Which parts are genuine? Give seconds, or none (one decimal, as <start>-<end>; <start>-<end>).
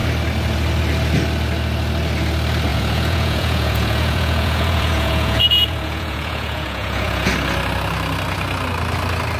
0.0-2.7; 7.3-9.4